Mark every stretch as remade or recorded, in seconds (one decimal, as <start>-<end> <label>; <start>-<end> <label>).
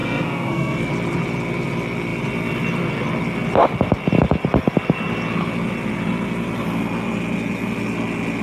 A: 0.0-0.9 remade; 0.9-8.4 recorded